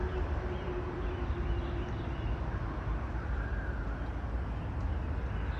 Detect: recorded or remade recorded